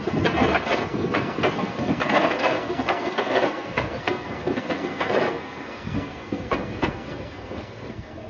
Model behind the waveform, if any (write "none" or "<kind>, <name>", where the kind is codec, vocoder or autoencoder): codec, SNAC